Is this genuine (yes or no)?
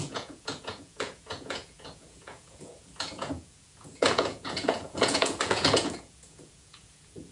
no